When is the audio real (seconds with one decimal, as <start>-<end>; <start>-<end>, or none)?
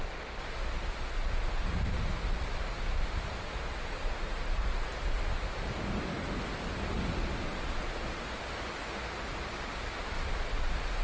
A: 0.0-11.0